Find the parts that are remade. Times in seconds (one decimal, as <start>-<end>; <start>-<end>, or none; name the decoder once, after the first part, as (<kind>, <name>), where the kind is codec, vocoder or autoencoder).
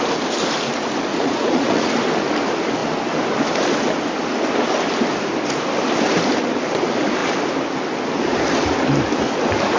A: 1.1-1.9 (vocoder, Vocos)